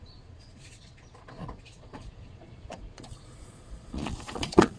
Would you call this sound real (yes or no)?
no